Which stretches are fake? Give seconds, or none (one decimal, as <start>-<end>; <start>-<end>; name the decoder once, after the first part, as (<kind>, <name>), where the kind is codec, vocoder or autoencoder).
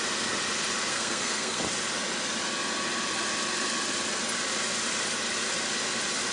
0.9-1.6 (codec, SNAC)